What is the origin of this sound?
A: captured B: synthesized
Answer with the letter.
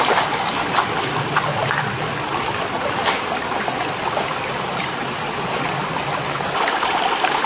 A